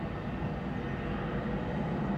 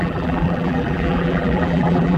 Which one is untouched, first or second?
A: first